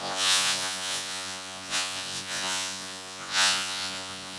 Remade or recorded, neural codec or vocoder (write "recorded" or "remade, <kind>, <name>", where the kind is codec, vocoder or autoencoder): remade, vocoder, Vocos